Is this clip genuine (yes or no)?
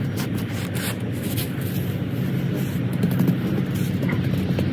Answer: yes